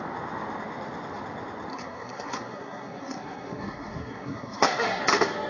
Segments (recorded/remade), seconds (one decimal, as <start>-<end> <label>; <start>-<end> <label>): 0.0-1.7 recorded; 1.7-5.0 remade; 5.0-5.5 recorded